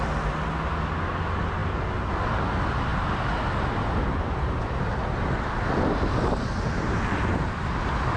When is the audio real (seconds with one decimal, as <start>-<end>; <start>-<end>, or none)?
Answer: 0.0-8.2